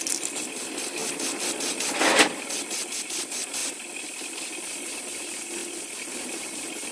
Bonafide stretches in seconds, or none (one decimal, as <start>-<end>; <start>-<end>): 0.0-6.9